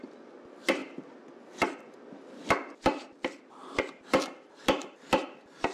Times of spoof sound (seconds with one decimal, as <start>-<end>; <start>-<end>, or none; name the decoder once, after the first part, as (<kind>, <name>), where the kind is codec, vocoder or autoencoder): 0.0-0.8 (vocoder, BigVGAN v2); 1.9-5.7